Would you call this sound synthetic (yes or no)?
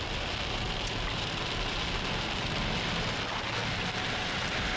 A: no